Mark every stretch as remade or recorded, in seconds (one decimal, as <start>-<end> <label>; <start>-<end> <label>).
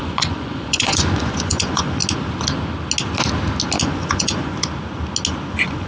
0.0-2.0 remade; 2.0-3.8 recorded; 3.8-4.5 remade; 4.5-5.5 recorded; 5.5-5.9 remade